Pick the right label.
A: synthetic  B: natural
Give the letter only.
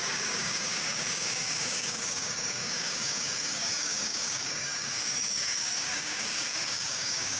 A